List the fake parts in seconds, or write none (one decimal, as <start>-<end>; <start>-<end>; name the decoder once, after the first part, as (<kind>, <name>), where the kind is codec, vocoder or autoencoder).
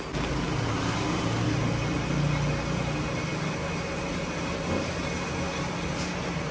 none